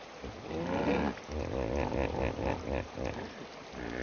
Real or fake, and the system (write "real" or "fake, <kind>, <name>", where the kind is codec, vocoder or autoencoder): fake, vocoder, BigVGAN v2